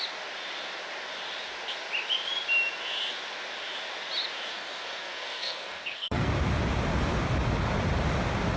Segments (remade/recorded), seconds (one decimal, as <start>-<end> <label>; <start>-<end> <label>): 0.0-4.5 recorded; 4.5-6.3 remade; 6.3-8.6 recorded